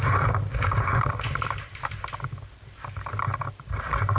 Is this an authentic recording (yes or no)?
yes